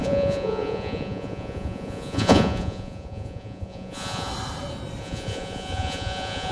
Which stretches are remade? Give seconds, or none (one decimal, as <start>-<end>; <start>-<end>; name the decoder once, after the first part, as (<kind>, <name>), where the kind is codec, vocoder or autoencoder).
0.0-4.3 (vocoder, Vocos); 5.0-6.5